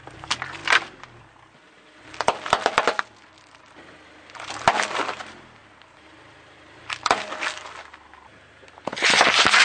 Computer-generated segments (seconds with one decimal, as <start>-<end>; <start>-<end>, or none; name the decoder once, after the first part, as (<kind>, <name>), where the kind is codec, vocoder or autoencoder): none